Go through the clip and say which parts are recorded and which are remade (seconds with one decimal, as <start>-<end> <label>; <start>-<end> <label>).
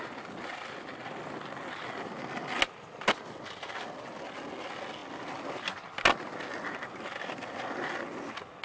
0.0-8.6 recorded